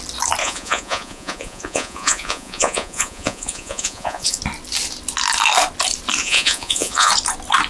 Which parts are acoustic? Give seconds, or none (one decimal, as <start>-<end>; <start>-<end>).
0.0-0.4; 4.4-6.2; 7.1-7.7